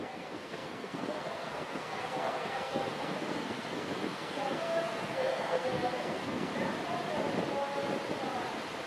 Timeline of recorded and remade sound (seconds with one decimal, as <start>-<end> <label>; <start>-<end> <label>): 0.0-6.5 remade; 6.5-8.9 recorded